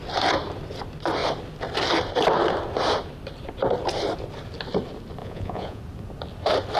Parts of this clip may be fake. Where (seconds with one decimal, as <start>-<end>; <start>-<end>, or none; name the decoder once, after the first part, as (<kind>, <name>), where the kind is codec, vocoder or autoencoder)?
5.2-5.8 (vocoder, Vocos)